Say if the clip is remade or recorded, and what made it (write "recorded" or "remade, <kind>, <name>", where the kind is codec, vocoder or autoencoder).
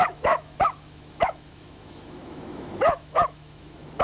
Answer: remade, autoencoder, DAC-VAE